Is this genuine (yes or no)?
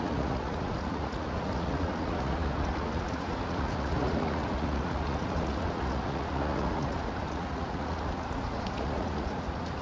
no